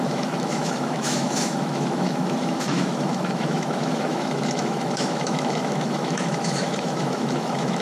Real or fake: fake